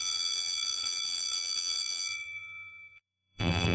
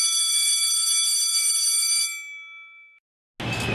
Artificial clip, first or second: first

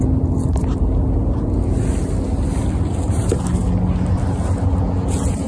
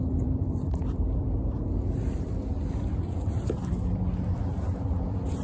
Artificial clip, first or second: second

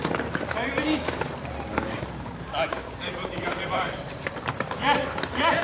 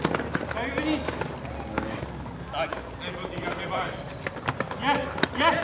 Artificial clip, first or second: first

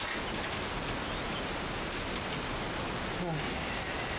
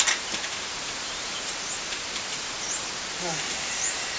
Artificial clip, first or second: second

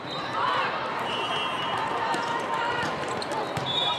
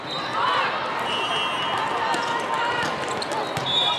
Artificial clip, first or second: first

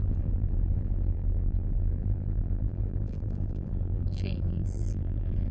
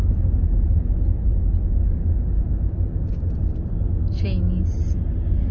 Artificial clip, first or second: first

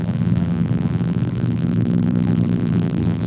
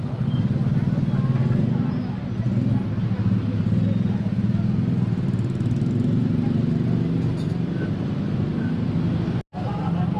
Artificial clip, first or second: first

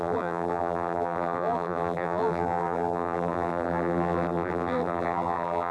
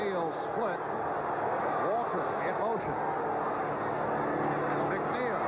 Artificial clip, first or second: first